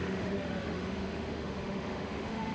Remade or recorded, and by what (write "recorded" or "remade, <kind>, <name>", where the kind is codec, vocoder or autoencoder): remade, autoencoder, DAC-VAE